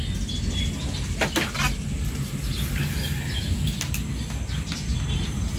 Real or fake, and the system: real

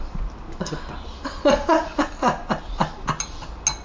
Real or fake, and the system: real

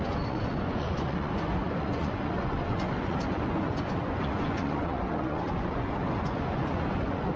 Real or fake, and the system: fake, vocoder, Vocos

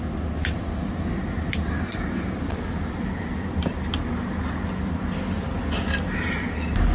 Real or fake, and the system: real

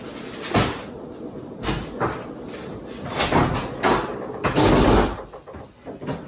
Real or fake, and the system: real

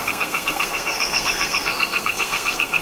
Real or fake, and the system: fake, codec, SNAC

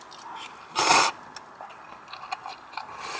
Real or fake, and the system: real